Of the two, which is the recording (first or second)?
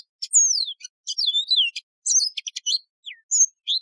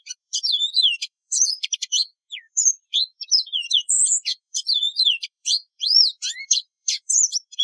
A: first